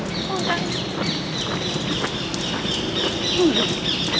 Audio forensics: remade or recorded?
recorded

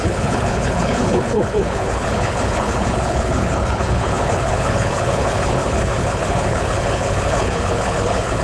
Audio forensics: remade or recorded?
remade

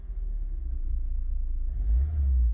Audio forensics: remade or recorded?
remade